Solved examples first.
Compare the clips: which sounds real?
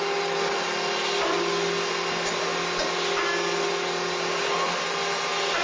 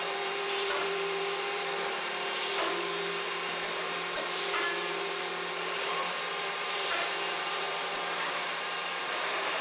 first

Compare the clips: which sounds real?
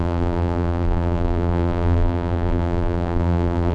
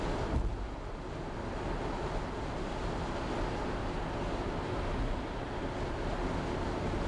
second